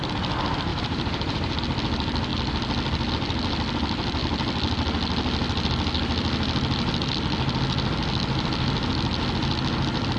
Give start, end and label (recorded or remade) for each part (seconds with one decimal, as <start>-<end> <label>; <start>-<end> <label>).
0.0-0.7 recorded; 0.7-1.6 remade; 1.6-10.2 recorded